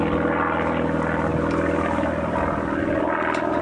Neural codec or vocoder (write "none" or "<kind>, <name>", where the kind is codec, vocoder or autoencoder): none